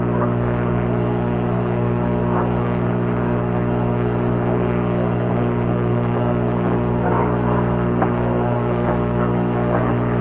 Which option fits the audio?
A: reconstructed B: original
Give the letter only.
A